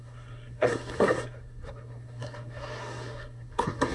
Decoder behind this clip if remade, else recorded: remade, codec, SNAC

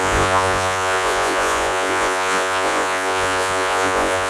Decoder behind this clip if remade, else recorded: remade, vocoder, Vocos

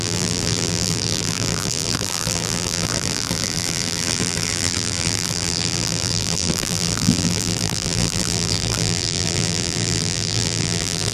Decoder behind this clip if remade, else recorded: remade, vocoder, BigVGAN v2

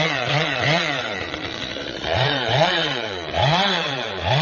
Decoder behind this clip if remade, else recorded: remade, vocoder, Vocos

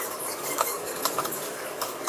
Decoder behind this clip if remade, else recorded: remade, codec, DAC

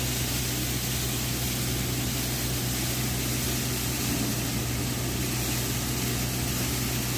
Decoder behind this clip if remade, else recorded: recorded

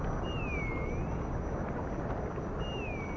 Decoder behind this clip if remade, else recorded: recorded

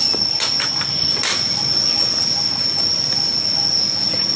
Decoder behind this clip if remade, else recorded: recorded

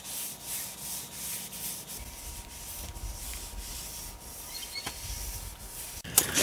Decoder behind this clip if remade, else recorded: recorded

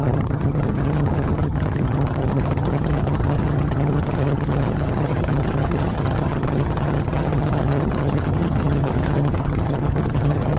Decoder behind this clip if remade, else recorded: remade, vocoder, HiFi-GAN